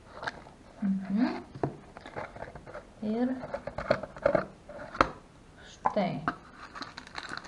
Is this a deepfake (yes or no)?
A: no